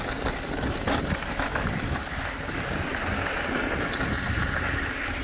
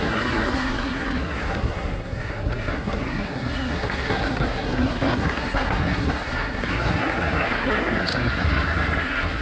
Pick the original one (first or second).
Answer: first